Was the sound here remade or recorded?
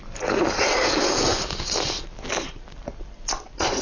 recorded